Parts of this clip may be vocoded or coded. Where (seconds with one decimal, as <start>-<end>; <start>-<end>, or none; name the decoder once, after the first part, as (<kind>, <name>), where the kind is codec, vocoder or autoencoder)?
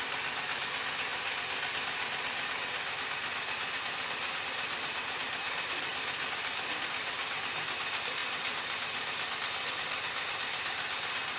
none